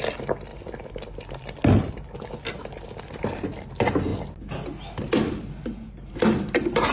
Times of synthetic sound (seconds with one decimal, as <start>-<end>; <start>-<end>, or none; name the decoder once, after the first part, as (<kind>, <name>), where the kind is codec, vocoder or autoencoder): none